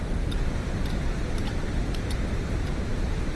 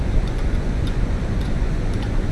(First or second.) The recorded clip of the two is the first